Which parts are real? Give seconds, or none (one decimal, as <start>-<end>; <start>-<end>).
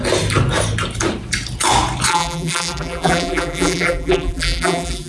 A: 0.0-2.1